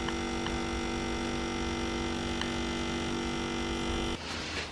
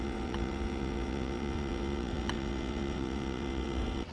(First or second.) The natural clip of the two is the first